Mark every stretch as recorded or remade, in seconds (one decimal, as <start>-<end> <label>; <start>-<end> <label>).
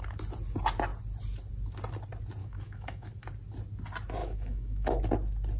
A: 0.0-2.4 recorded; 2.4-3.1 remade; 3.1-4.2 recorded; 4.2-5.0 remade; 5.0-5.6 recorded